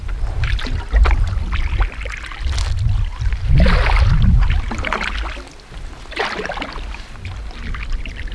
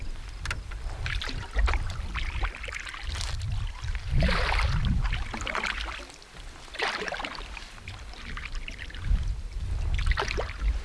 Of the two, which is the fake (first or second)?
second